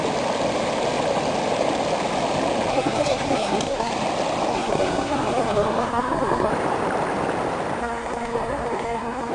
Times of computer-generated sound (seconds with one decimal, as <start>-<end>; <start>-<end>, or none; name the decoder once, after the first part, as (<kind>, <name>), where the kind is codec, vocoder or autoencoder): 2.7-3.9 (codec, SNAC); 4.5-6.5; 7.8-9.3